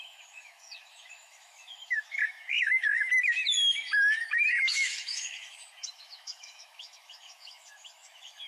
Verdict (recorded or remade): remade